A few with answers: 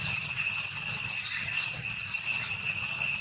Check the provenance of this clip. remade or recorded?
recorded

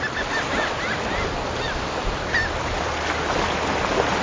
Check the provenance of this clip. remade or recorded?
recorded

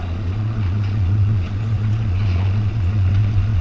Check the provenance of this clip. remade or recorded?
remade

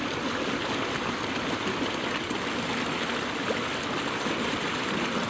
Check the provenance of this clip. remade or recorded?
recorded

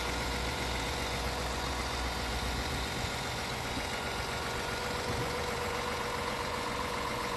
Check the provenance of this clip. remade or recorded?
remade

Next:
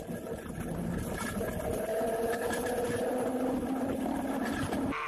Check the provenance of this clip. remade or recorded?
recorded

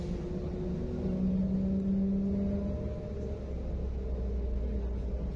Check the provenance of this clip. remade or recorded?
recorded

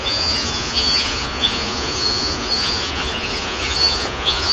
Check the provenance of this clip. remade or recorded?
remade